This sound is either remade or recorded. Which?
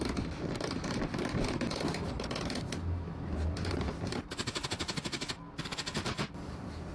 recorded